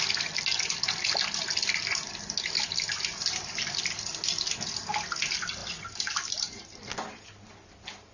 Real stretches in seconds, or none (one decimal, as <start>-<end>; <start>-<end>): 0.0-5.6; 6.9-8.1